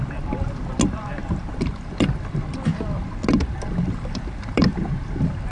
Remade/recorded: recorded